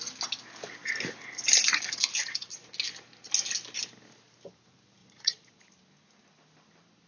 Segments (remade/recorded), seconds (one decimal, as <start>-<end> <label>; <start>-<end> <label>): 0.0-5.0 recorded; 5.0-5.6 remade; 5.6-7.1 recorded